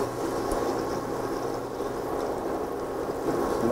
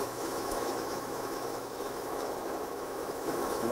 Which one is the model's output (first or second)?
second